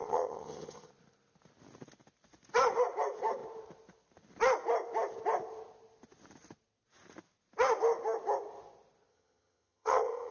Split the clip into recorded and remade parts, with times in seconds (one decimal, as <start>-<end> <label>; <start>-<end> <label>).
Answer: 0.0-0.9 remade; 0.9-9.1 recorded; 9.1-10.3 remade